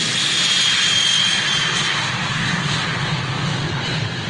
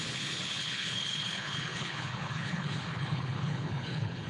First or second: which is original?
first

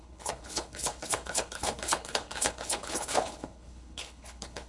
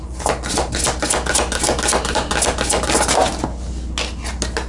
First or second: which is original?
second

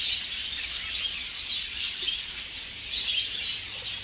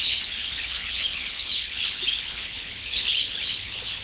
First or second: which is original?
first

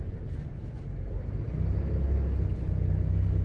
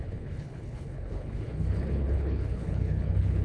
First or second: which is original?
first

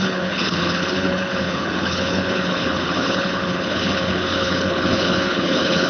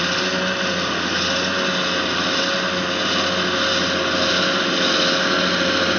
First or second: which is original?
second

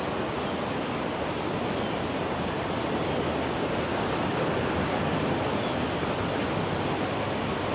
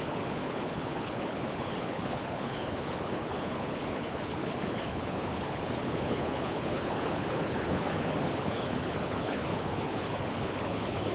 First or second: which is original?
first